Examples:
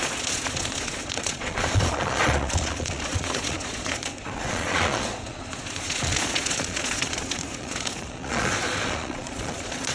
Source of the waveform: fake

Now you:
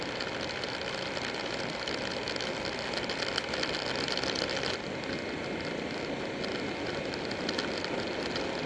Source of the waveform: real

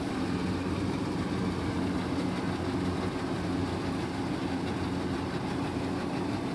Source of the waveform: real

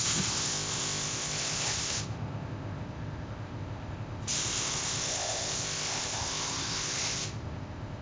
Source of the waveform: fake